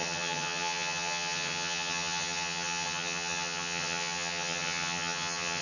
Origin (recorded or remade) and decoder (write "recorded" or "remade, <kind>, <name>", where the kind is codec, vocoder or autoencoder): remade, vocoder, HiFi-GAN